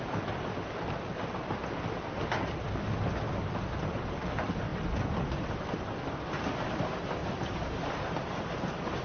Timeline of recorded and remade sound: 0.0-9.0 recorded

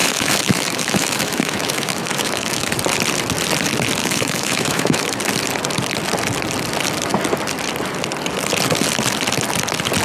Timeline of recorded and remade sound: 0.0-2.7 remade; 2.7-4.0 recorded; 4.0-5.2 remade; 5.2-10.0 recorded

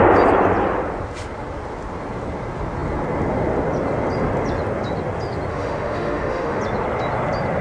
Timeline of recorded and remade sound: 0.0-5.5 recorded; 5.5-6.6 remade; 6.6-7.6 recorded